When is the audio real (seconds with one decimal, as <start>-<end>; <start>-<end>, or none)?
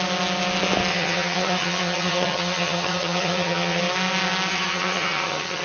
0.0-0.9; 3.8-4.5